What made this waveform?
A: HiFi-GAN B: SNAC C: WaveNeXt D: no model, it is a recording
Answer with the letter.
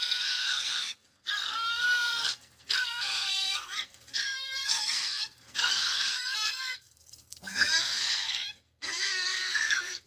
B